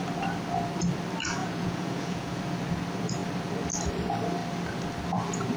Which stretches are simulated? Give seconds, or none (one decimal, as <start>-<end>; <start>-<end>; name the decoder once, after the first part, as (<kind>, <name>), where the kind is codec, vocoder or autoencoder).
1.4-2.4 (vocoder, Vocos)